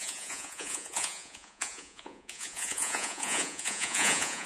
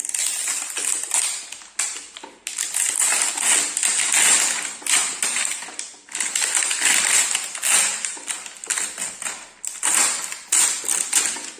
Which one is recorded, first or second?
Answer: second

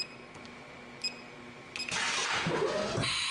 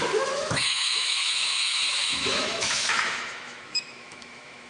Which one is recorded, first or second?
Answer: first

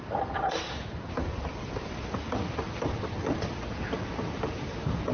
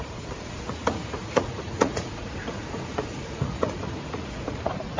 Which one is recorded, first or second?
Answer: first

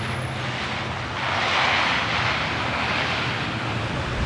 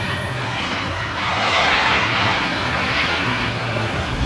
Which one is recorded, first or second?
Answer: first